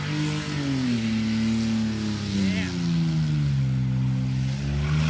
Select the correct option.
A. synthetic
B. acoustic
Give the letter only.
B